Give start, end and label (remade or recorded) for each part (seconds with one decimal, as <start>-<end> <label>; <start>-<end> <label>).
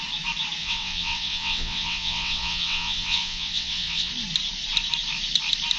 0.0-0.6 recorded; 0.6-4.1 remade; 4.1-5.8 recorded